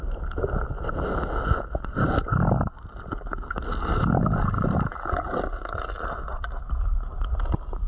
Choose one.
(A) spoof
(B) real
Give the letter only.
B